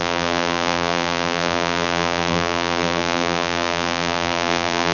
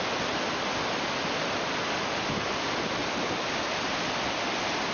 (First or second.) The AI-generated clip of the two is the first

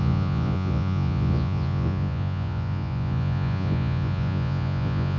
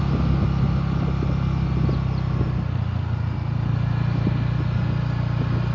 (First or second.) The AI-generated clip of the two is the first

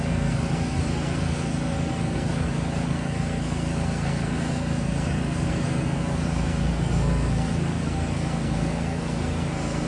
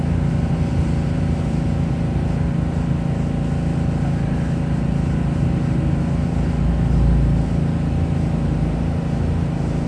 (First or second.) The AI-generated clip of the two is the first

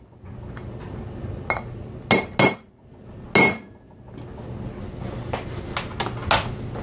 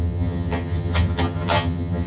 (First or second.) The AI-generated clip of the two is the second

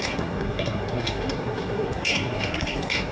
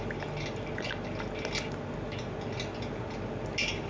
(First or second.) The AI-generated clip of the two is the first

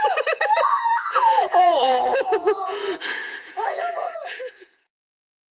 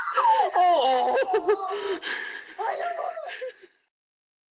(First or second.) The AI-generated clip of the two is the first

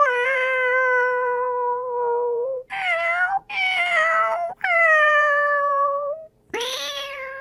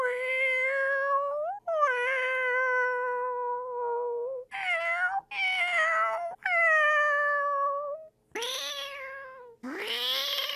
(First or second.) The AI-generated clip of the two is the first